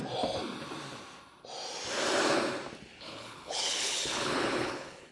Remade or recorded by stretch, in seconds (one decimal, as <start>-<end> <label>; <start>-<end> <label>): 0.0-2.9 recorded; 2.9-5.1 remade

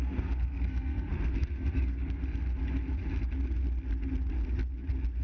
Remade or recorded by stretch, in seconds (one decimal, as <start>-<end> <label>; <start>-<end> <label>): 0.0-2.2 remade; 2.2-5.2 recorded